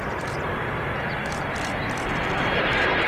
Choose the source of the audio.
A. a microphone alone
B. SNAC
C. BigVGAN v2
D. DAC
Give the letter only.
A